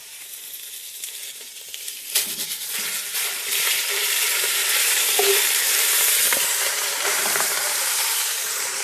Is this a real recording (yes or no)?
no